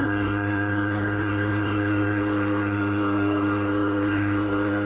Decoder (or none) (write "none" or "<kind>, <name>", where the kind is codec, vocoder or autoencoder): codec, SNAC